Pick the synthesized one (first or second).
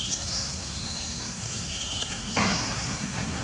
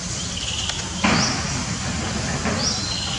first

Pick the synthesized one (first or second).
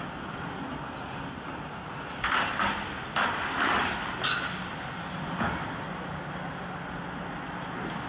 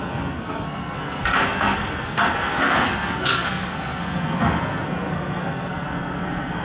second